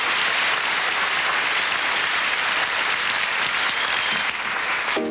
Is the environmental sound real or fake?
real